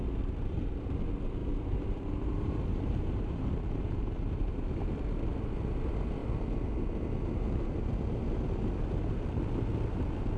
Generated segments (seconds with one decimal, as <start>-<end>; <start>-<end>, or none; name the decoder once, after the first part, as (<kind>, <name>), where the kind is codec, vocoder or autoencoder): 1.4-4.7 (vocoder, BigVGAN v2)